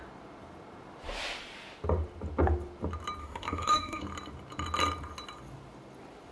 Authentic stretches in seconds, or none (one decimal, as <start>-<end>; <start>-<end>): 0.0-3.2; 4.0-6.3